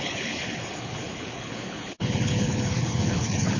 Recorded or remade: remade